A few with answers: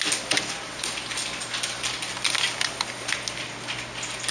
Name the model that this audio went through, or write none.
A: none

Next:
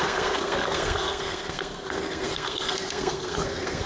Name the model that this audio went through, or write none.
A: codec, SNAC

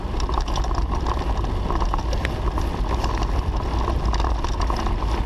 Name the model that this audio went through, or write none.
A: none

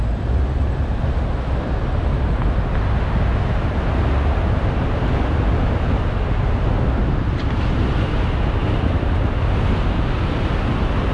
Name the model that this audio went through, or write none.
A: none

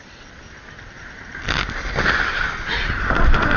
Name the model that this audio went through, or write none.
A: none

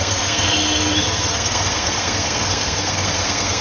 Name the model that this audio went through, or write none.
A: codec, SNAC